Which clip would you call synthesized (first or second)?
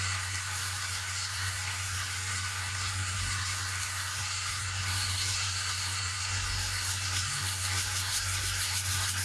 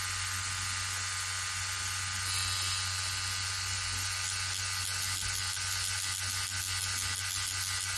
first